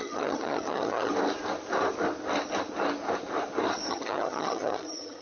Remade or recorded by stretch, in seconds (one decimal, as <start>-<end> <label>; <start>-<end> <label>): 0.0-1.1 remade; 1.1-3.9 recorded; 3.9-5.2 remade